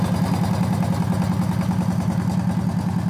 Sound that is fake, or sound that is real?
real